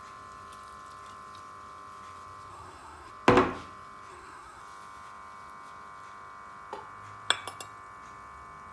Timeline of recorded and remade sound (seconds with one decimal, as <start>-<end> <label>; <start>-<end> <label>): 0.0-2.5 recorded; 2.5-3.1 remade; 3.1-4.1 recorded; 4.1-4.6 remade; 4.6-8.7 recorded